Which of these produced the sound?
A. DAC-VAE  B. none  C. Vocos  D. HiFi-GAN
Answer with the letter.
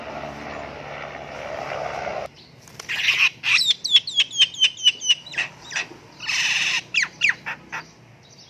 B